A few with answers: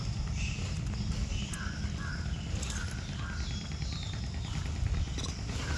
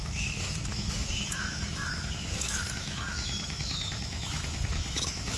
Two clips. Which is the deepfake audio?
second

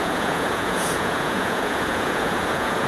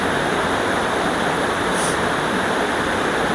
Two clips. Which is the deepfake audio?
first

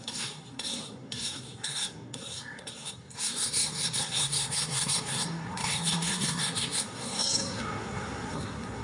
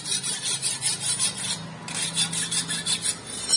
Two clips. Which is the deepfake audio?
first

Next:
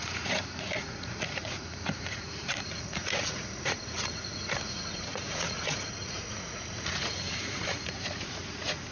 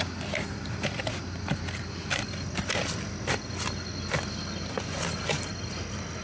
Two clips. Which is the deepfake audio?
first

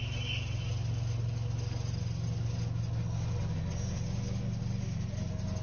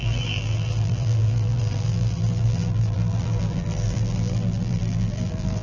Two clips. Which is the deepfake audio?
second